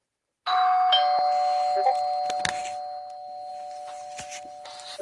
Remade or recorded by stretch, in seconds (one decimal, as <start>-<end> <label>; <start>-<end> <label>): 0.0-5.0 recorded